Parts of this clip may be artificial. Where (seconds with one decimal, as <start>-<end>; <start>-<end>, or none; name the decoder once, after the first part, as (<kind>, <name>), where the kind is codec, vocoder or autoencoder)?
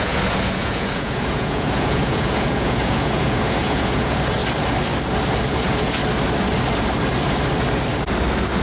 0.0-4.4 (vocoder, Vocos); 5.5-6.0